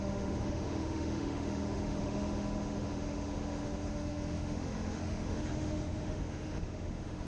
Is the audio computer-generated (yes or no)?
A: yes